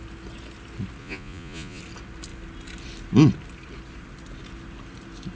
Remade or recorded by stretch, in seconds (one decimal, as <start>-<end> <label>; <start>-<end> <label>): 0.0-1.0 recorded; 1.0-1.8 remade; 1.8-5.4 recorded